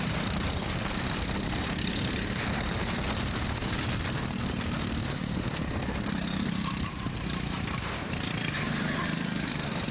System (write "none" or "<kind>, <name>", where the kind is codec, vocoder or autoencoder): vocoder, BigVGAN v2